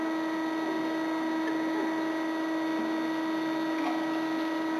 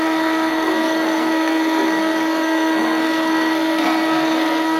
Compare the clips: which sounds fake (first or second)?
second